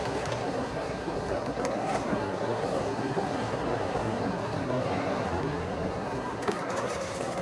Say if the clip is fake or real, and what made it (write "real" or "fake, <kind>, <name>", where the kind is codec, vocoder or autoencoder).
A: fake, codec, SNAC